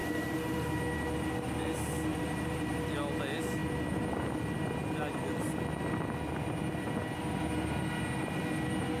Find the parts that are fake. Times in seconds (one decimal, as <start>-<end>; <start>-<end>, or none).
0.0-0.7; 2.1-2.9